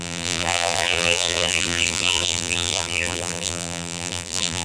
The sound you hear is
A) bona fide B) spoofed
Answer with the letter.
B